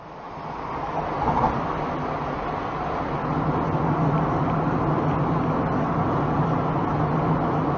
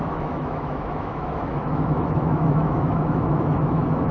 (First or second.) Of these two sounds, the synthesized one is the second